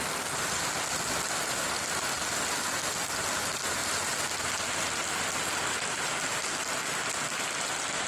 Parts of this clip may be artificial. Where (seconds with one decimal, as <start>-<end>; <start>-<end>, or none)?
none